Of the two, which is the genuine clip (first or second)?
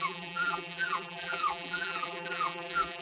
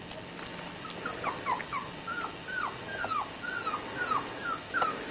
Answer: second